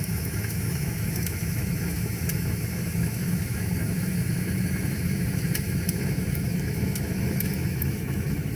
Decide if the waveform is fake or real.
fake